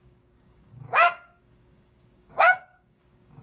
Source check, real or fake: fake